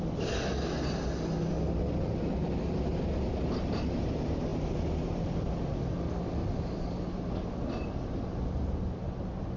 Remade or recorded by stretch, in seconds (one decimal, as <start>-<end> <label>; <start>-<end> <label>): 0.0-9.6 recorded